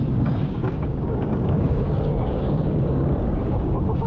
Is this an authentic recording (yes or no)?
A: no